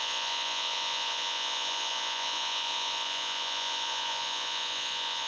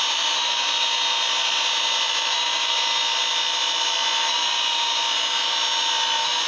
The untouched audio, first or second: second